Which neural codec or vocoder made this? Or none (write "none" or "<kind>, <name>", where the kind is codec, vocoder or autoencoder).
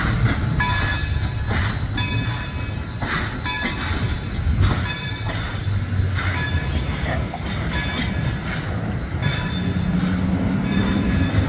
none